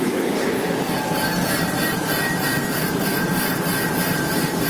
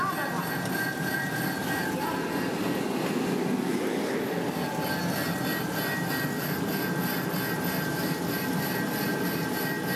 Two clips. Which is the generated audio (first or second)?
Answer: first